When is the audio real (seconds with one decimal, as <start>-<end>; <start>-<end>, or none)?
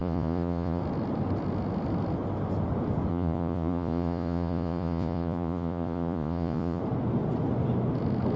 0.8-3.1; 6.8-8.4